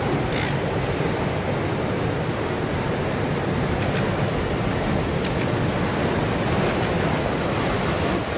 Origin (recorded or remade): recorded